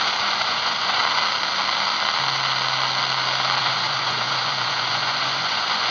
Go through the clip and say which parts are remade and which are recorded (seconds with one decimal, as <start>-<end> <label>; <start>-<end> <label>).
0.0-1.0 remade; 1.0-3.6 recorded; 3.6-5.9 remade